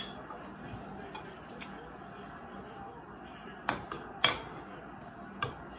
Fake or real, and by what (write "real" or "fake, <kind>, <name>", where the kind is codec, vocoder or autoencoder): real